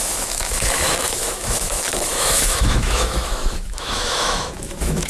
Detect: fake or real fake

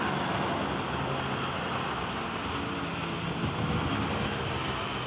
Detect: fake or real real